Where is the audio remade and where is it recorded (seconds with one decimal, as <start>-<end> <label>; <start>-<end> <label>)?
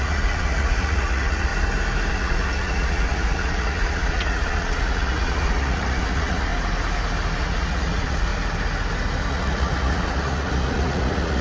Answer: 0.0-1.5 remade; 1.5-2.1 recorded; 2.1-6.5 remade; 6.5-7.4 recorded; 7.4-8.3 remade; 8.3-9.3 recorded; 9.3-11.4 remade